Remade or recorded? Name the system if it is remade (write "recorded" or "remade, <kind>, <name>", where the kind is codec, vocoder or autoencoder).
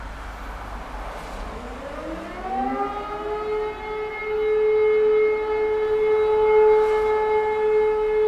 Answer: recorded